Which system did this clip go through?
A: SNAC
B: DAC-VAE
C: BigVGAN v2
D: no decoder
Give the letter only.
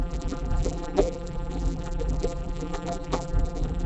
C